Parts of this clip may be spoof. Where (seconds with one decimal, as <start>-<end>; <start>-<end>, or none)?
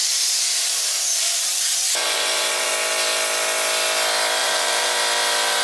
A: 0.0-2.7; 4.4-5.0